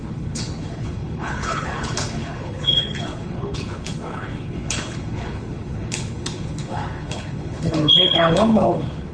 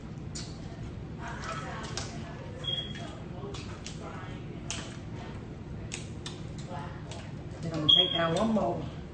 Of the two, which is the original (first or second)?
second